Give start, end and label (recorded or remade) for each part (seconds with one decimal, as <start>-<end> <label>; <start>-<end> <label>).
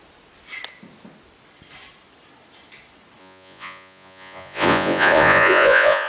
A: 0.0-3.2 recorded; 3.2-6.1 remade